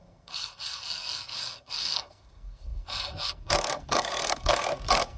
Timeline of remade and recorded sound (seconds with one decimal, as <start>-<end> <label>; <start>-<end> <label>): 0.0-5.2 remade